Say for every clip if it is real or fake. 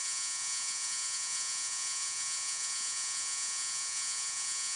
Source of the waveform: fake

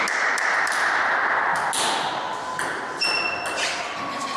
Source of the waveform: real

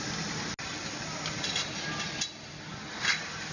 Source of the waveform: real